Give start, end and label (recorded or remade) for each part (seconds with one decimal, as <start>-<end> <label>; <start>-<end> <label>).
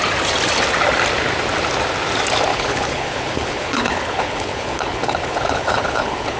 0.0-2.5 recorded; 2.5-6.4 remade